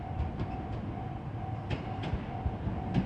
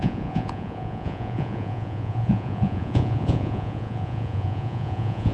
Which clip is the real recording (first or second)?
first